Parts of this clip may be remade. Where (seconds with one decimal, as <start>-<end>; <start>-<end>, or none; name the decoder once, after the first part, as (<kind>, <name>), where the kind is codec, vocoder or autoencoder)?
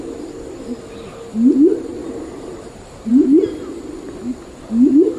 1.9-3.1 (vocoder, BigVGAN v2)